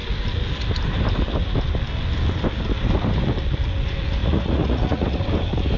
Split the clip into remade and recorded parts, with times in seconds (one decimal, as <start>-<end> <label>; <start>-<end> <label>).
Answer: 0.0-4.2 recorded; 4.2-5.2 remade; 5.2-5.8 recorded